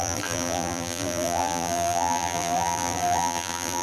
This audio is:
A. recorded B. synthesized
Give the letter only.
B